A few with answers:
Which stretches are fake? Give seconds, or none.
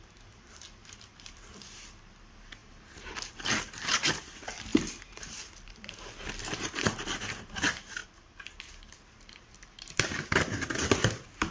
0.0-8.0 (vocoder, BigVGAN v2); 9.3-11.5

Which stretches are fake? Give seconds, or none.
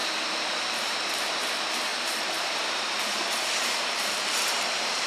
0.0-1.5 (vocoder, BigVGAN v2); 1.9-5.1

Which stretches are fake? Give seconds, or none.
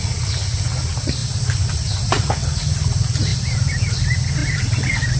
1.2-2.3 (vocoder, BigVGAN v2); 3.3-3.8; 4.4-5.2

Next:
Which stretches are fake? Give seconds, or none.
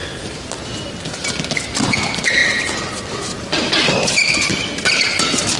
none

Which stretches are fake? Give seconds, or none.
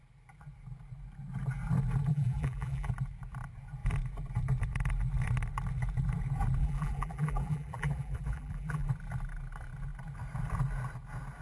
2.1-2.9 (vocoder, BigVGAN v2); 6.6-8.9